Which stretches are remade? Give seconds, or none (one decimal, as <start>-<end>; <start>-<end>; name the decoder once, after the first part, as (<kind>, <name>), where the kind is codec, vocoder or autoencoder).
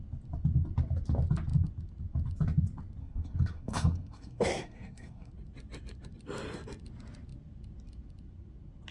3.0-5.3 (codec, SNAC)